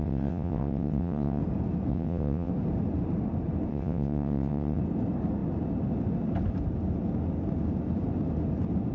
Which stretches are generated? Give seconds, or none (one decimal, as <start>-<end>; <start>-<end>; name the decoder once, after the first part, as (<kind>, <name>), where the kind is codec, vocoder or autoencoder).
0.0-1.4 (vocoder, WaveNeXt); 1.9-2.5; 3.7-4.8